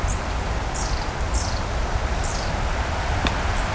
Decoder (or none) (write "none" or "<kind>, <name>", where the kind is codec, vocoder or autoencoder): none